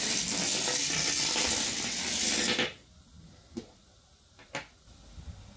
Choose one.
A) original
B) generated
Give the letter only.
A